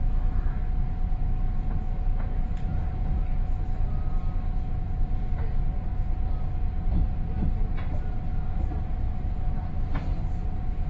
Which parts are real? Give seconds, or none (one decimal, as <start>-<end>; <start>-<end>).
0.0-2.7; 3.2-10.9